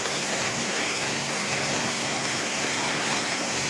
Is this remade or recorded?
remade